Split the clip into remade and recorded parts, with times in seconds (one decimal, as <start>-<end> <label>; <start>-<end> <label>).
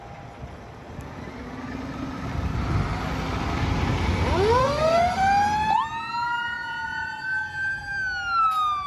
0.0-4.6 recorded; 4.6-5.2 remade; 5.2-8.9 recorded